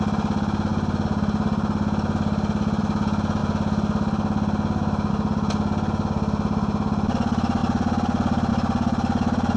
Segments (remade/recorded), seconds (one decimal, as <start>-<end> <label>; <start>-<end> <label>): 0.0-9.6 recorded